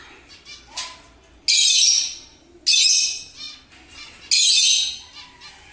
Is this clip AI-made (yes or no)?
no